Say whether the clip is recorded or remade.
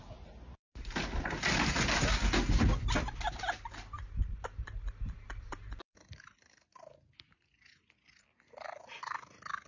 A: recorded